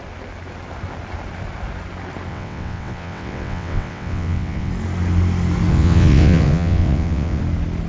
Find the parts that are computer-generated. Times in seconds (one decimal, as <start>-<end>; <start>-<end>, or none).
2.3-4.7; 5.7-7.4

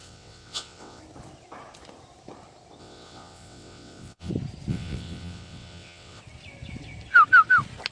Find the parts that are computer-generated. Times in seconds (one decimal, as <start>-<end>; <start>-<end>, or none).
0.0-1.0; 2.8-4.3; 4.7-6.2

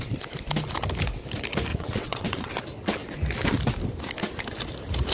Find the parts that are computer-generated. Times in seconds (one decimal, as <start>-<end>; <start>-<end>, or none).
1.7-2.5

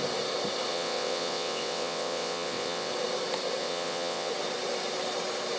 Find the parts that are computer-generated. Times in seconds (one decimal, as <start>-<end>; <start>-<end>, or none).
0.7-2.9; 3.6-4.3